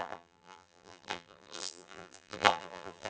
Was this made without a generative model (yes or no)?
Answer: no